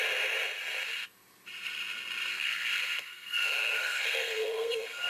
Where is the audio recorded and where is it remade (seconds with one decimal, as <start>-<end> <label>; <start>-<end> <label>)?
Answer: 0.0-2.3 recorded; 2.3-5.1 remade